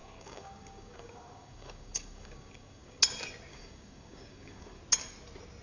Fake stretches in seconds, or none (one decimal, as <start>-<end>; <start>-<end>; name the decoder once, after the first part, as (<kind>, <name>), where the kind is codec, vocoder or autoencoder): 0.0-3.0 (codec, DAC); 3.5-4.8